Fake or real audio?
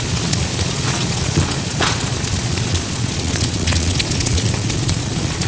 fake